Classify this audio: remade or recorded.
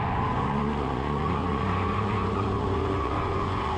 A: remade